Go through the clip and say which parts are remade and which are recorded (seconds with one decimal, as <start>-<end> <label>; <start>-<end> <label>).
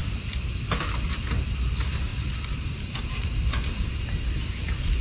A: 0.0-1.2 recorded; 1.2-5.0 remade